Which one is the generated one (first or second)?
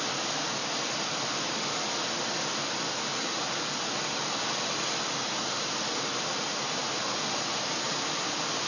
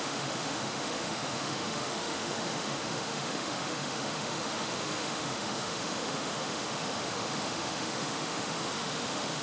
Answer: second